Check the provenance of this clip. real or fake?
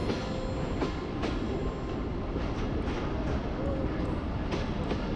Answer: real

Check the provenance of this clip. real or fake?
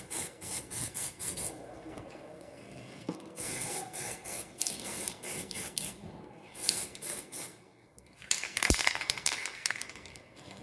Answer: fake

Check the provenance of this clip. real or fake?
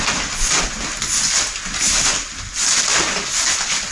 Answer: real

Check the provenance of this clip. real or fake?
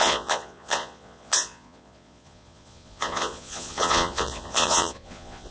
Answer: fake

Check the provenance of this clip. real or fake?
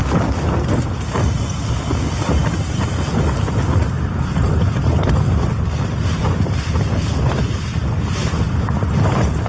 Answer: real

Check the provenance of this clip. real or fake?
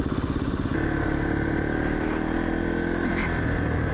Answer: real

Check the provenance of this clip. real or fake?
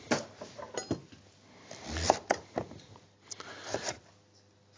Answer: real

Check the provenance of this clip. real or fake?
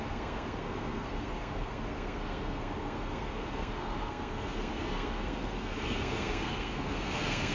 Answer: fake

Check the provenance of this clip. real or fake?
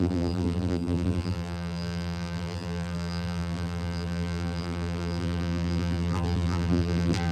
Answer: fake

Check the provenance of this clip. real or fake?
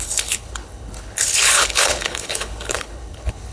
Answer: fake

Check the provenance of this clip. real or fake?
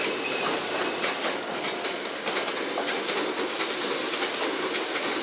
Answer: real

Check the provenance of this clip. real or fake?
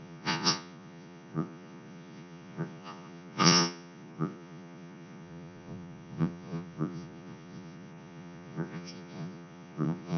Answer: fake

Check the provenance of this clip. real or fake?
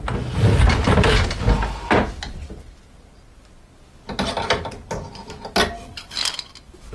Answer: real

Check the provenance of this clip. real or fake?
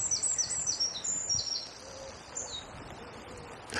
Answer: real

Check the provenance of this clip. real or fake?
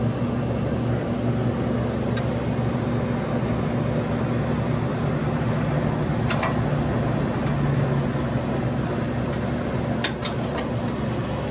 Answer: real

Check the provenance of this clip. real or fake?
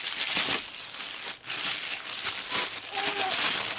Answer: real